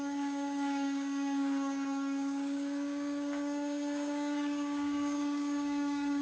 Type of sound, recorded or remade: remade